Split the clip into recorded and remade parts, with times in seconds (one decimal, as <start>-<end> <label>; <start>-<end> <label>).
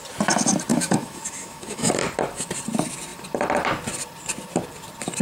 0.0-0.7 recorded; 0.7-1.9 remade; 1.9-5.2 recorded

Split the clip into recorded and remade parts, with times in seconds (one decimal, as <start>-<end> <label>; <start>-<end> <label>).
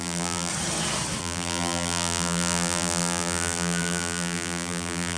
0.0-0.5 remade; 0.5-1.2 recorded; 1.2-5.2 remade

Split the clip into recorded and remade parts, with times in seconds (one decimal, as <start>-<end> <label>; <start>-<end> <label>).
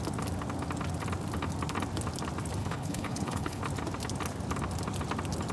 0.0-2.6 recorded; 2.6-3.6 remade; 3.6-5.5 recorded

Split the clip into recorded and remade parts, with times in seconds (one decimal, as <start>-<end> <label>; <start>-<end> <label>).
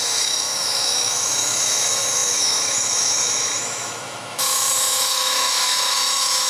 0.0-6.5 remade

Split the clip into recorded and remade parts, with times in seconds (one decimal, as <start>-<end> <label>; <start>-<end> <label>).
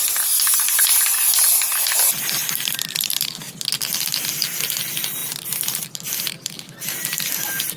0.0-7.8 recorded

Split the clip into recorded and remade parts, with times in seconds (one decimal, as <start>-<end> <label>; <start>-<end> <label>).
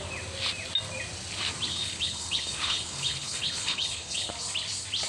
0.0-1.7 recorded; 1.7-4.3 remade; 4.3-5.1 recorded